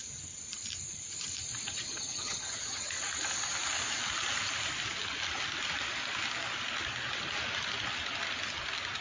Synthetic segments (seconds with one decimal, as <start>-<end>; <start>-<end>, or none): 1.7-2.9